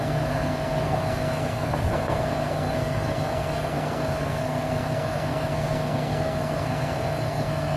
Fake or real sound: fake